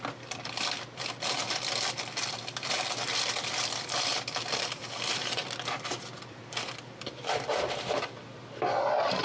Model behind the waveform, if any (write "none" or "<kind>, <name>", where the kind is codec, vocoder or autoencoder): vocoder, BigVGAN v2